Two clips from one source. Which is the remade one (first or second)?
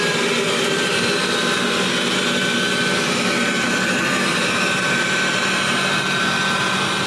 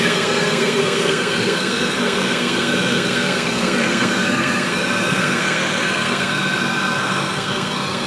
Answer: second